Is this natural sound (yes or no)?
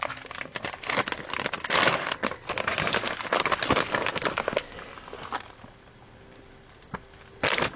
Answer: yes